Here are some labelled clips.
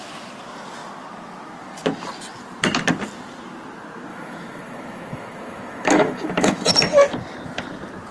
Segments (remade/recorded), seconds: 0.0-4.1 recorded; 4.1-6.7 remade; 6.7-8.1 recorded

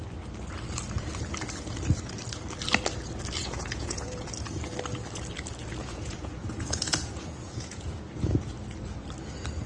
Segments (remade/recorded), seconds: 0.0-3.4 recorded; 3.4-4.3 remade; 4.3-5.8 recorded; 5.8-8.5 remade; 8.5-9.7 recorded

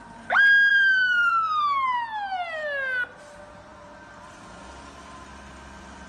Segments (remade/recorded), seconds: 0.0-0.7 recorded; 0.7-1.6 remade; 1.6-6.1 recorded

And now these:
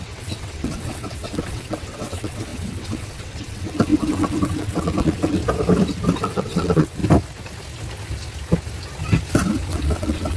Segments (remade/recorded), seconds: 0.0-5.4 remade; 5.4-6.2 recorded; 6.2-7.0 remade; 7.0-9.7 recorded; 9.7-10.4 remade

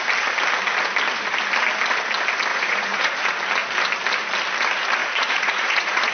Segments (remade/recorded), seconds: 0.0-2.5 recorded; 2.5-3.2 remade; 3.2-5.0 recorded; 5.0-6.1 remade